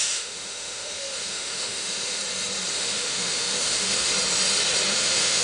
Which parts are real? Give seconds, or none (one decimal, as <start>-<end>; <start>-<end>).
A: 2.2-2.7; 4.1-4.9